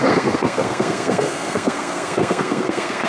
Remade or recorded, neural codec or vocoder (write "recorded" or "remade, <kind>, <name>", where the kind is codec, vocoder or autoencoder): remade, codec, SNAC